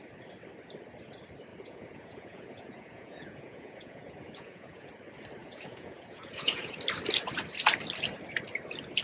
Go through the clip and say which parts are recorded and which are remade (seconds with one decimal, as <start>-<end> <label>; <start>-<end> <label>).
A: 0.0-1.5 recorded; 1.5-4.9 remade; 4.9-5.4 recorded; 5.4-6.8 remade; 6.8-9.0 recorded